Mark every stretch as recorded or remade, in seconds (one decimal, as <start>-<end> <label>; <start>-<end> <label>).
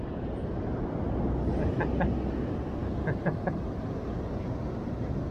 0.0-5.3 recorded